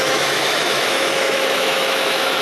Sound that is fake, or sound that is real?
fake